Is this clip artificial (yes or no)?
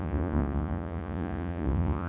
yes